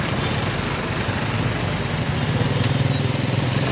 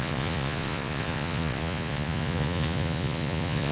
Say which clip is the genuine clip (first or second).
first